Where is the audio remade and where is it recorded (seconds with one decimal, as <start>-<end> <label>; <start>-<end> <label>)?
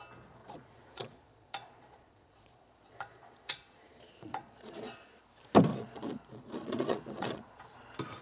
0.0-0.4 recorded; 0.4-5.2 remade; 5.2-5.7 recorded; 5.7-7.6 remade; 7.6-8.2 recorded